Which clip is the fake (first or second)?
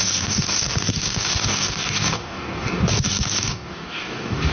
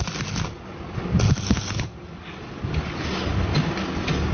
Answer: first